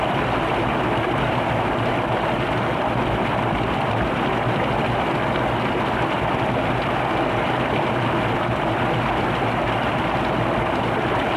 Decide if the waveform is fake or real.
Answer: real